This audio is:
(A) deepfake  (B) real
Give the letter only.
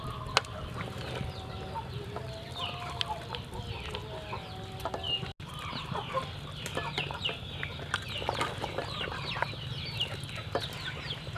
B